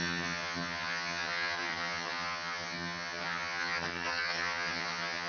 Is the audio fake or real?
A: fake